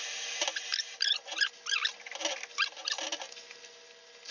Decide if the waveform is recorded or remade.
recorded